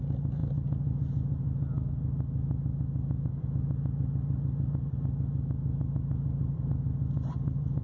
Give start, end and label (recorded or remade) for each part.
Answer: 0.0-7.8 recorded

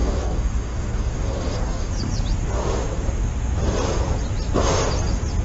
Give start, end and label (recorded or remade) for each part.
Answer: 0.0-1.9 remade; 1.9-5.4 recorded

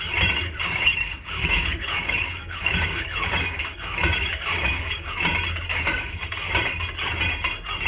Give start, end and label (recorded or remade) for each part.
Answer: 0.0-0.6 recorded; 0.6-5.2 remade; 5.2-5.7 recorded; 5.7-6.5 remade; 6.5-7.9 recorded

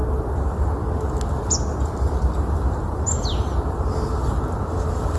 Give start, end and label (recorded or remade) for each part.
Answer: 0.0-5.2 recorded

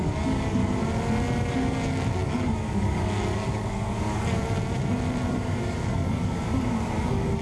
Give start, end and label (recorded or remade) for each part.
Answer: 0.0-0.6 remade; 0.6-1.5 recorded; 1.5-4.4 remade; 4.4-5.3 recorded; 5.3-7.4 remade